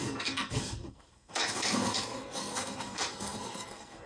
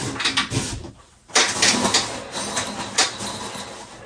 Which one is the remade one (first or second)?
first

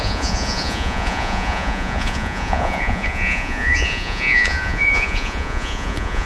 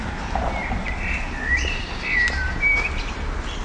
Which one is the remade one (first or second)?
first